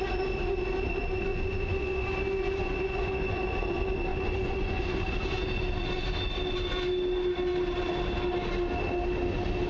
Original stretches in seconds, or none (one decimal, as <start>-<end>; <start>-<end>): 0.0-1.3; 2.1-2.6; 3.4-4.1; 4.8-9.7